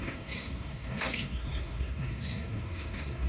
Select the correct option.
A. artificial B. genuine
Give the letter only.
A